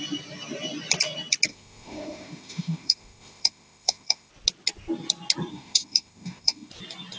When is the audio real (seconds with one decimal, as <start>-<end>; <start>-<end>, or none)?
0.0-1.5; 4.3-5.5; 6.7-7.2